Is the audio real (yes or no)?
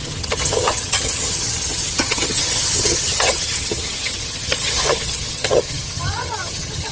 no